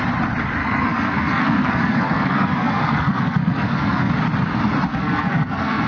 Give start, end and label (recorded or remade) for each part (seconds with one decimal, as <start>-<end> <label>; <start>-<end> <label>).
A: 0.0-0.6 recorded; 0.6-4.1 remade; 4.1-4.9 recorded; 4.9-5.9 remade